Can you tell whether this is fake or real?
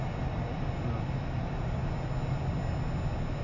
real